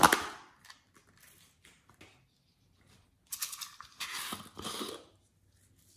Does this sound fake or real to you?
real